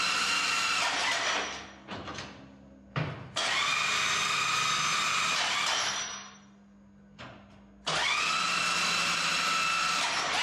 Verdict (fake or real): real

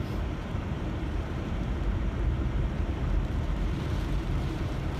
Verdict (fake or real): fake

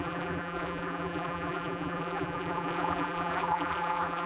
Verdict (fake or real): fake